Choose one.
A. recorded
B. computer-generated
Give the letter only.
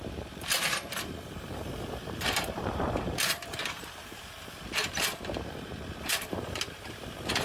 B